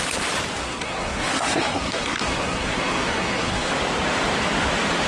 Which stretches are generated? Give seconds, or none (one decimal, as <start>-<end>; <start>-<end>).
0.6-3.7